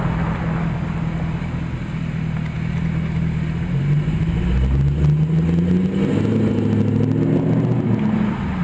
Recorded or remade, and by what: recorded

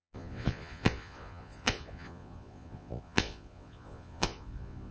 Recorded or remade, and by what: remade, vocoder, Vocos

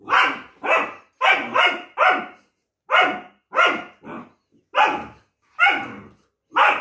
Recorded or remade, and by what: recorded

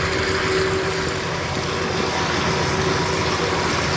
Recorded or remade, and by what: recorded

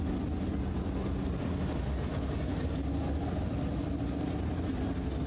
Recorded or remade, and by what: recorded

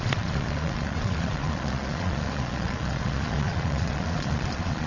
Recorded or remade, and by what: remade, vocoder, Vocos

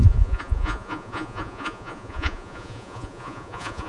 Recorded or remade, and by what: remade, vocoder, Vocos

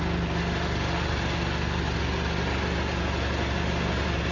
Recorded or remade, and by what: recorded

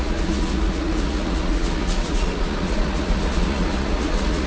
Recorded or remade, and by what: remade, vocoder, Vocos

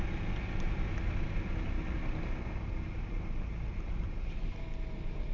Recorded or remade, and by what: recorded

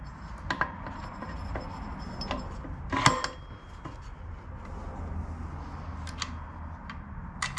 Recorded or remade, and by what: recorded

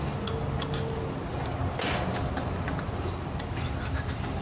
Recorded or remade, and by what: recorded